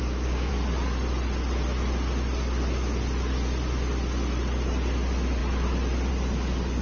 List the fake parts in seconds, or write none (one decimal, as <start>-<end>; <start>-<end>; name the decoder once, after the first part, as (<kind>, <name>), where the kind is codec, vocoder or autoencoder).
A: 0.0-0.5 (codec, DAC)

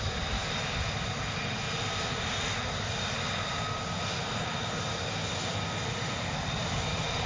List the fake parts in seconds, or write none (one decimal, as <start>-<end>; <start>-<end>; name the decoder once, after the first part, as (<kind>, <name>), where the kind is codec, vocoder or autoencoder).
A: none

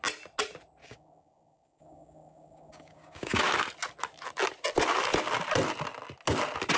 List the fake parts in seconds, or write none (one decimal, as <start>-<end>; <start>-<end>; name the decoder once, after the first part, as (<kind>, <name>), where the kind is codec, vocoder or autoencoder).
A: 0.8-3.4 (codec, DAC)

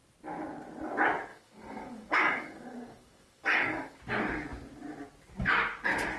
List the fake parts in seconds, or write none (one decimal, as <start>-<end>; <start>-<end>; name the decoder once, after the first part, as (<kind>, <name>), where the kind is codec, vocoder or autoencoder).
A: 1.3-4.0 (codec, DAC)

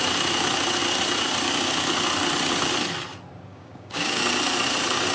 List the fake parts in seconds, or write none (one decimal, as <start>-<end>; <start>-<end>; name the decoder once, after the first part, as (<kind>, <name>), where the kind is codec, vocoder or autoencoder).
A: 3.5-4.2 (codec, DAC)

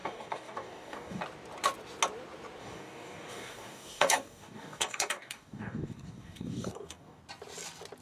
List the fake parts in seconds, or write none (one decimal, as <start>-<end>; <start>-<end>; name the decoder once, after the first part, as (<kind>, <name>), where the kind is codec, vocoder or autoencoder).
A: 0.0-1.2 (codec, DAC); 2.6-7.2

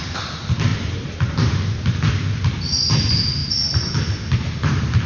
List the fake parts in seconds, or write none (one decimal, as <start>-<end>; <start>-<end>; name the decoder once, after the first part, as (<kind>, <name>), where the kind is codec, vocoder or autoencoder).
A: none

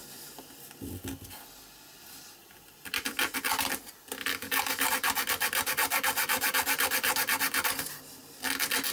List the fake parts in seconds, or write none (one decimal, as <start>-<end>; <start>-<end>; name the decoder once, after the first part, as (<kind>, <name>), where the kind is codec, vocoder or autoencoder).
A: 4.3-4.9 (codec, DAC)